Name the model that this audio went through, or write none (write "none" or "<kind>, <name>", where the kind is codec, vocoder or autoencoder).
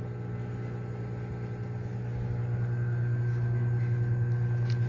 none